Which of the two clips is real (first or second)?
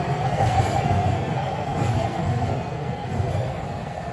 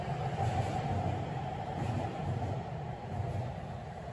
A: second